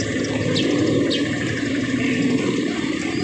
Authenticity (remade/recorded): recorded